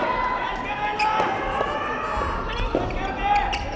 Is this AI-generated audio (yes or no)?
no